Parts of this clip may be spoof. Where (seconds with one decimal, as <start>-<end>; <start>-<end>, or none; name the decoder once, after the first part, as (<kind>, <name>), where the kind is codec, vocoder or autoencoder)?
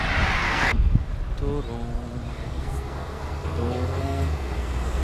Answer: 0.4-1.1 (codec, SNAC); 2.3-5.0